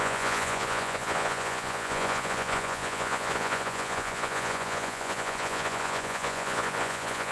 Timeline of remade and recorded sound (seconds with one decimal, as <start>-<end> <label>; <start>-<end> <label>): 0.0-7.3 remade